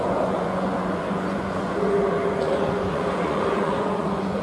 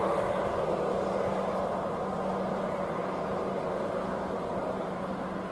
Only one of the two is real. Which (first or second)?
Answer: second